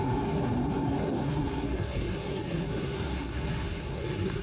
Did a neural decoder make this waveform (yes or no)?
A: yes